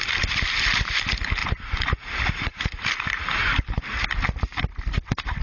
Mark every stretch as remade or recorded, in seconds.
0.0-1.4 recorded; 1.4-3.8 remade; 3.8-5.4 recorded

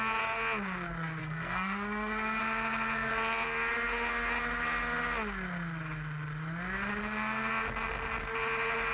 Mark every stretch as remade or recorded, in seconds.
0.0-1.2 recorded; 1.2-2.4 remade; 2.4-8.9 recorded

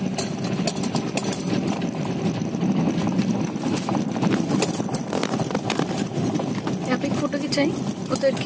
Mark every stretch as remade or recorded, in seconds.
0.0-8.5 recorded